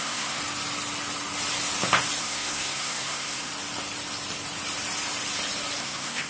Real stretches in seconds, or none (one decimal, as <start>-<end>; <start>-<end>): 0.4-2.2; 3.5-5.8